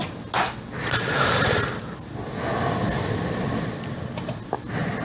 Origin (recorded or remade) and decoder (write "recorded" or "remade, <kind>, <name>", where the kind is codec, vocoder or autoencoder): recorded